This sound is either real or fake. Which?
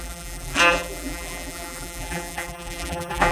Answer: fake